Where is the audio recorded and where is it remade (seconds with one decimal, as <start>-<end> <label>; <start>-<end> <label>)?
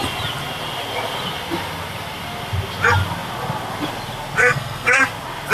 0.0-4.4 recorded; 4.4-5.1 remade; 5.1-5.5 recorded